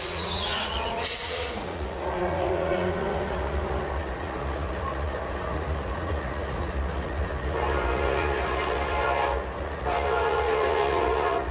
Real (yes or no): no